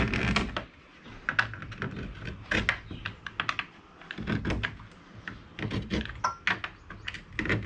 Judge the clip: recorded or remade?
recorded